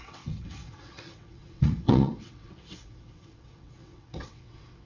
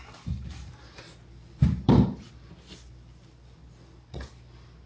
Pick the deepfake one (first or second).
first